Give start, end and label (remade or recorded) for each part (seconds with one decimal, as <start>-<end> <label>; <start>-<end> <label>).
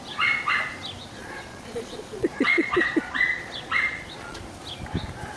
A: 0.0-1.2 recorded; 1.2-4.4 remade; 4.4-5.4 recorded